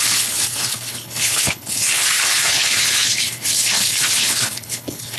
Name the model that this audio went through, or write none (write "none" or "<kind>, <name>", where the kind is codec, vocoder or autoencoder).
codec, HILCodec